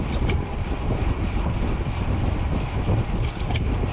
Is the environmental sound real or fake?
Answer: real